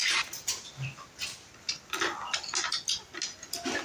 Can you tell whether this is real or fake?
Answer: real